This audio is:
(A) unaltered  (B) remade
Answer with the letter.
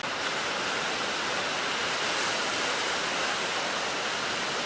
A